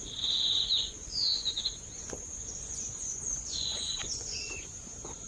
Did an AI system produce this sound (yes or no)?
yes